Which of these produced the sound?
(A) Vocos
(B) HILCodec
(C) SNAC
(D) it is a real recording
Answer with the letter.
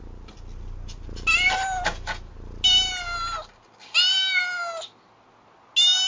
D